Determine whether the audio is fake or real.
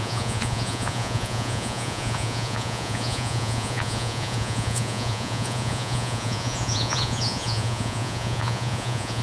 fake